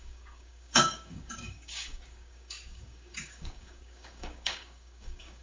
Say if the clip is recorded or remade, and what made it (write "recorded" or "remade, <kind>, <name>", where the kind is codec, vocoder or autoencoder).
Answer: remade, codec, DAC